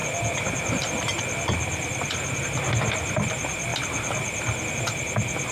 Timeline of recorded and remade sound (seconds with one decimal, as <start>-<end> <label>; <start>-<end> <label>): 0.0-5.5 recorded